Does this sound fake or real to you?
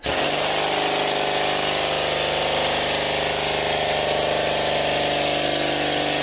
real